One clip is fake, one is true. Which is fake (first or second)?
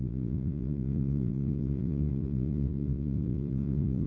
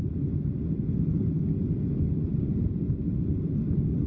first